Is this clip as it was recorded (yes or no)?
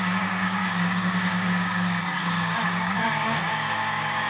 no